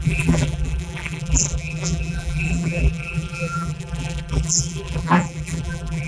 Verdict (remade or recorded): remade